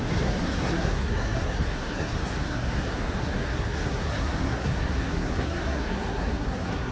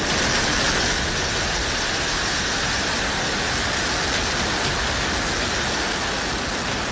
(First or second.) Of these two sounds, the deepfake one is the first